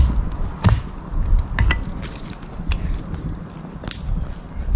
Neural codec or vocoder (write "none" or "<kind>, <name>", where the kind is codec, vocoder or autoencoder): none